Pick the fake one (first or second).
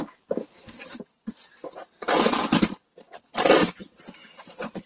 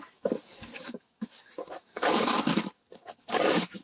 second